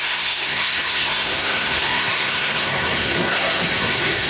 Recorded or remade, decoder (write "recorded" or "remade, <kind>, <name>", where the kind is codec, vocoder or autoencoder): remade, codec, SNAC